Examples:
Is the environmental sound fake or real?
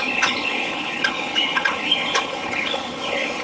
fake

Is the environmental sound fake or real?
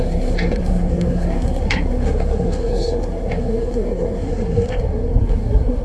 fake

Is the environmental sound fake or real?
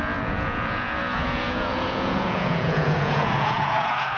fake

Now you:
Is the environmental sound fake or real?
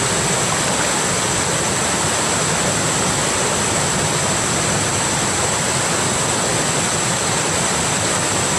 real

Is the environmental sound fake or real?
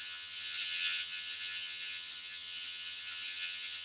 fake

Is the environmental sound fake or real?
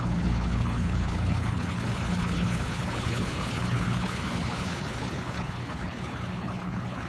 fake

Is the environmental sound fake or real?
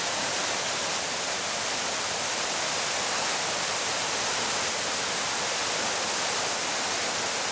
real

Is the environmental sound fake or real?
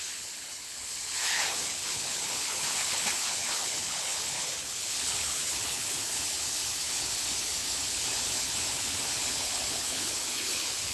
fake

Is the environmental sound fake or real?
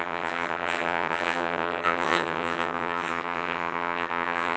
fake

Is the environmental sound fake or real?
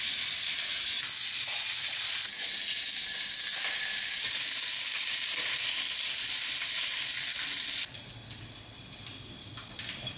real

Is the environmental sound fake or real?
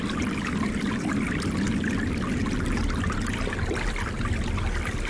real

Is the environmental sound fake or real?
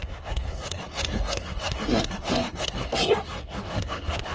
fake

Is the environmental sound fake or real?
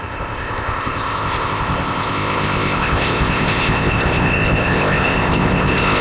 fake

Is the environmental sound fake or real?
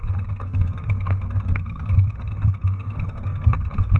fake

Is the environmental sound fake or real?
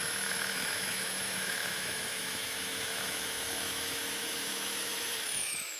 fake